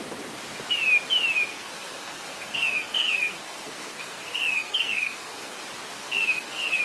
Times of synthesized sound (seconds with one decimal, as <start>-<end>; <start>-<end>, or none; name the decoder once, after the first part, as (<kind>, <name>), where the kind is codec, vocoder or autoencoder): 1.5-5.6 (codec, SNAC); 6.0-6.8